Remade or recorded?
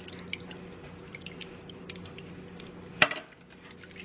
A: recorded